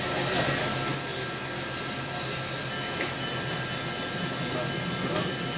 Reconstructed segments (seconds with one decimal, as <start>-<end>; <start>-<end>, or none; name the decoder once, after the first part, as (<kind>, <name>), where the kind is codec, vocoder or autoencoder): none